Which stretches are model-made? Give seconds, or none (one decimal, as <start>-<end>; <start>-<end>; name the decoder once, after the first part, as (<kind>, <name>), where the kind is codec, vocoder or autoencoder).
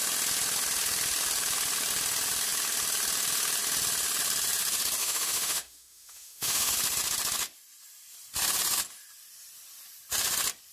5.0-6.7 (autoencoder, DAC-VAE)